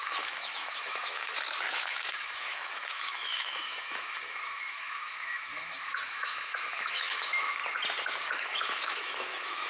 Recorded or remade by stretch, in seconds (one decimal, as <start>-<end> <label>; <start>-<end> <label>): 0.0-7.6 remade; 7.6-8.3 recorded; 8.3-9.7 remade